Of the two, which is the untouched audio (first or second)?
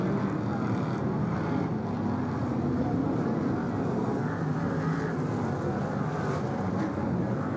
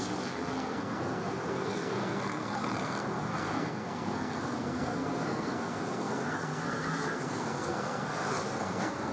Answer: first